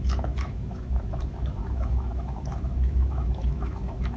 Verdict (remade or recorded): remade